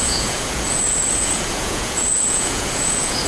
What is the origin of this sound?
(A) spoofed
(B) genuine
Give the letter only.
A